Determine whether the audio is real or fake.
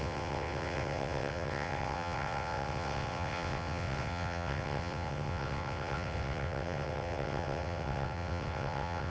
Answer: fake